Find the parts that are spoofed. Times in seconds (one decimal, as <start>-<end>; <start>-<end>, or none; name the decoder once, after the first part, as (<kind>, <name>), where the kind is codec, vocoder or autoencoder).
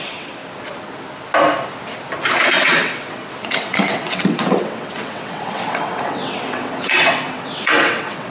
0.0-0.4 (vocoder, WaveNeXt); 2.6-8.3